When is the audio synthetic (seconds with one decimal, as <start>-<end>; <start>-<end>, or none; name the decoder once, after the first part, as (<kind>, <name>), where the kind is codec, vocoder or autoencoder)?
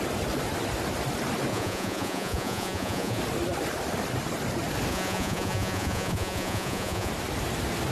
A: 1.5-3.2 (vocoder, Vocos); 4.9-7.1